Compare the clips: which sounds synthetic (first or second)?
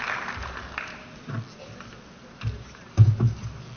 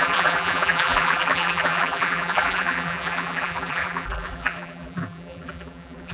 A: second